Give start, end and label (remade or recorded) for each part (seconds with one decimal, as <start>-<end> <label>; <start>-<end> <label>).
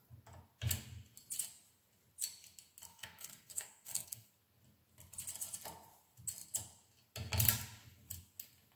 0.0-2.9 recorded; 2.9-4.3 remade; 4.3-8.8 recorded